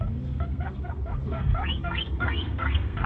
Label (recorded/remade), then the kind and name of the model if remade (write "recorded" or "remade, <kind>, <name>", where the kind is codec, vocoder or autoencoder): remade, codec, SNAC